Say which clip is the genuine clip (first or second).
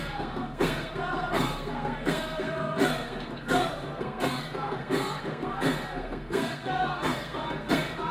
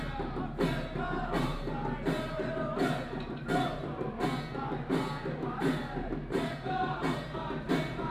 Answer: second